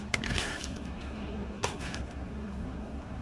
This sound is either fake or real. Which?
fake